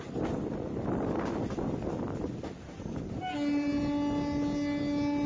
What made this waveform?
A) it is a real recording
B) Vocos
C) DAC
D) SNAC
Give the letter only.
A